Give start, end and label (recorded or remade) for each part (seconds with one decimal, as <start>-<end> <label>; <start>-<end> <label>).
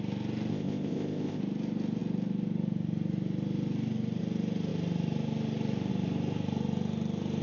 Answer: 0.0-0.5 recorded; 0.5-1.4 remade; 1.4-7.4 recorded